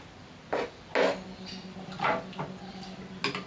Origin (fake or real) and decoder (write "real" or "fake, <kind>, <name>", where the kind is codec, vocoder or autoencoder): real